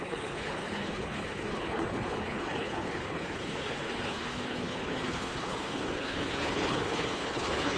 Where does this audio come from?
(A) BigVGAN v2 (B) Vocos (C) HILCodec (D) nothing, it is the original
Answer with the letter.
C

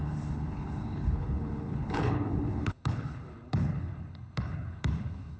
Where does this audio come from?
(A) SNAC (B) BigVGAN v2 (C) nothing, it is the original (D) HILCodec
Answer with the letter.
D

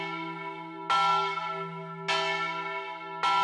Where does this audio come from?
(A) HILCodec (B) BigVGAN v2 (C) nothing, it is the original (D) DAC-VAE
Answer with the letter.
C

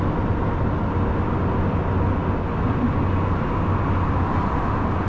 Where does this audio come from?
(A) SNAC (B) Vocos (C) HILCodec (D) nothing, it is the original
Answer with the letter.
D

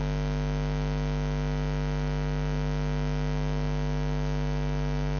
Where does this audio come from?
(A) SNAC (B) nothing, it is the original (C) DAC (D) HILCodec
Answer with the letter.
B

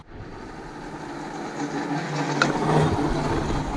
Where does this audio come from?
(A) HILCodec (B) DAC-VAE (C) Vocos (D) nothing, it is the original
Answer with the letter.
D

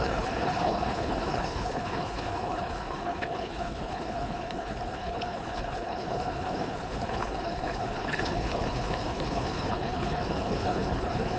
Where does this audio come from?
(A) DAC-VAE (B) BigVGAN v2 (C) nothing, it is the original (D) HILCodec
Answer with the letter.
D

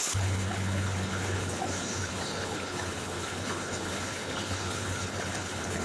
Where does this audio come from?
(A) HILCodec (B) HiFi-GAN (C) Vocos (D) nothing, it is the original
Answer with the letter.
A